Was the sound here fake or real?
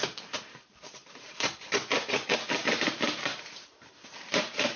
fake